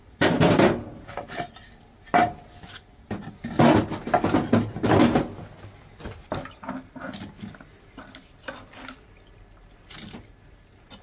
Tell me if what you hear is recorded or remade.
recorded